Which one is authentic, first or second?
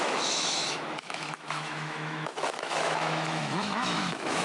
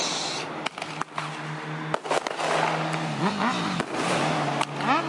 second